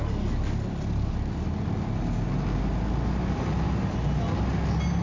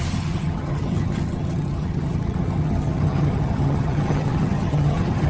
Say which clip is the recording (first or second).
first